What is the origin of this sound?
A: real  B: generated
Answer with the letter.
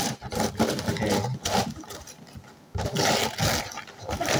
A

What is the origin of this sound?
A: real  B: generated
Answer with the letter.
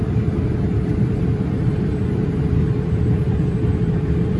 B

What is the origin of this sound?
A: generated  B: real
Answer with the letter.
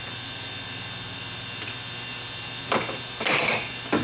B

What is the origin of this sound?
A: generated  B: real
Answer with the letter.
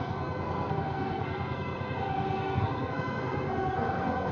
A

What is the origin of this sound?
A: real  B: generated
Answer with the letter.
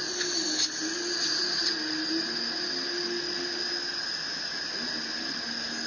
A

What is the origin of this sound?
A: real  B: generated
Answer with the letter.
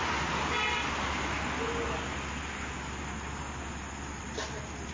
A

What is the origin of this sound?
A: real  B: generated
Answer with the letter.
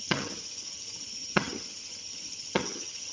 B